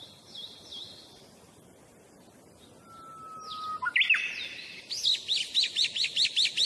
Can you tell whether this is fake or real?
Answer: real